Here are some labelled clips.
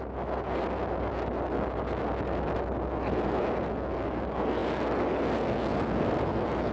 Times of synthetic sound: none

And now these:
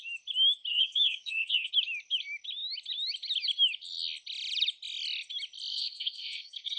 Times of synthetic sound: 0.7-1.7 (codec, SNAC); 5.7-6.8

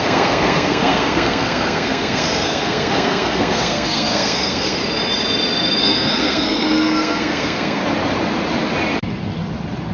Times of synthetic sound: 0.0-4.8 (codec, SNAC); 5.8-7.8

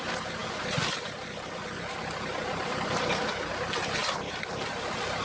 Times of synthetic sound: none

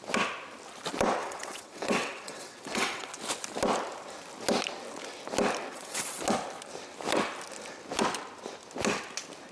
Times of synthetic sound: 1.2-3.1 (vocoder, WaveNeXt); 5.7-6.2

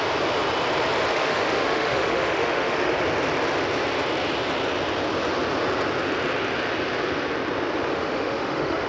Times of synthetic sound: 1.1-2.9 (autoencoder, DAC-VAE); 7.9-8.9